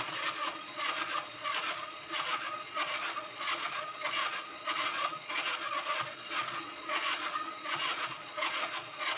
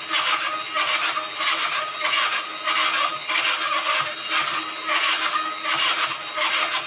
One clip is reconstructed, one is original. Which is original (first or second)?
second